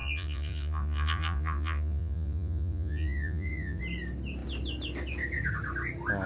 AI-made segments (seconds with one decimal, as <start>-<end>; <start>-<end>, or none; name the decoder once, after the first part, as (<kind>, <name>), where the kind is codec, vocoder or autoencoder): 0.0-3.8 (vocoder, Vocos)